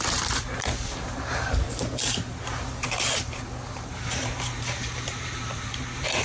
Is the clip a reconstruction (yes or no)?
yes